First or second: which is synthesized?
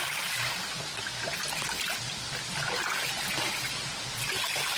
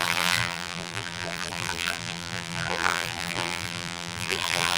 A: second